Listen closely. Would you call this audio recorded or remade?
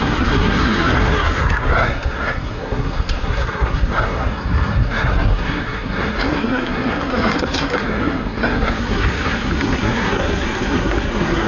remade